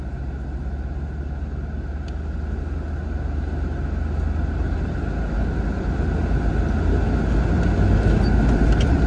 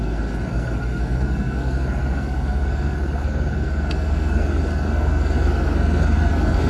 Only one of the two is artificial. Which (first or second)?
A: second